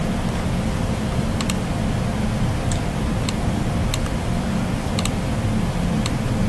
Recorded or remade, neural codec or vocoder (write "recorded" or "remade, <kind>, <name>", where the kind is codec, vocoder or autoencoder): recorded